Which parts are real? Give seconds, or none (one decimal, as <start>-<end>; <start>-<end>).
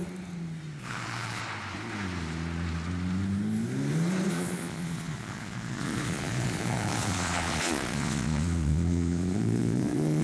0.0-0.8; 1.4-4.3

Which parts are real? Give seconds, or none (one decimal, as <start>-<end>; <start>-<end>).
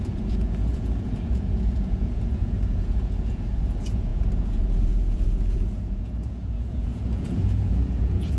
none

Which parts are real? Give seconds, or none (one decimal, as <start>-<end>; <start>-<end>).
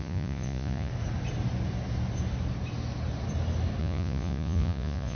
0.9-3.8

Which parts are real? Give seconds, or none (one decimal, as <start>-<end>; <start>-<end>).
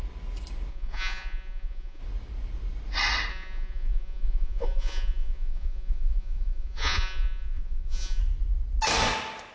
0.0-0.7; 2.0-3.3; 8.2-9.5